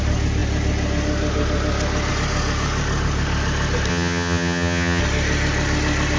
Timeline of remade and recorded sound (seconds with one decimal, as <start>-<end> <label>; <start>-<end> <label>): 0.0-3.9 recorded; 3.9-5.0 remade; 5.0-6.2 recorded